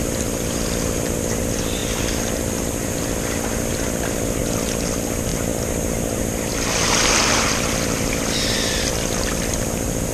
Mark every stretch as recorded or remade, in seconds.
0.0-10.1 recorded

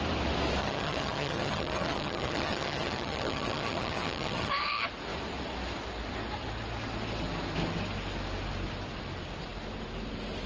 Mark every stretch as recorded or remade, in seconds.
0.0-0.6 recorded; 0.6-4.5 remade; 4.5-10.5 recorded

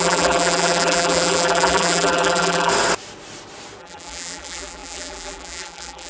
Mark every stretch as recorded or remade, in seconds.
0.0-2.7 remade; 2.7-3.8 recorded; 3.8-6.1 remade

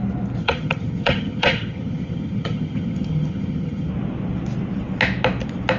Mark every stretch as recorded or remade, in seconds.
0.0-0.4 recorded; 0.4-3.9 remade; 3.9-5.8 recorded

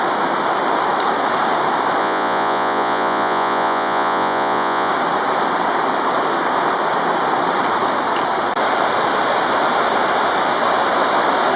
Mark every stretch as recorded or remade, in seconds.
0.0-2.0 recorded; 2.0-4.9 remade; 4.9-11.6 recorded

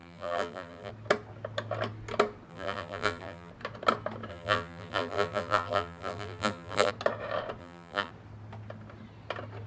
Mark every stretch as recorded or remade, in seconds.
0.0-0.9 remade; 0.9-2.5 recorded; 2.5-3.5 remade; 3.5-4.3 recorded; 4.3-6.9 remade; 6.9-7.6 recorded; 7.6-8.1 remade; 8.1-9.7 recorded

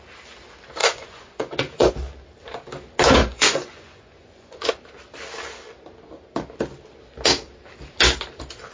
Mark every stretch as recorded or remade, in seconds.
0.0-0.8 recorded; 0.8-1.9 remade; 1.9-3.2 recorded; 3.2-4.7 remade; 4.7-8.7 recorded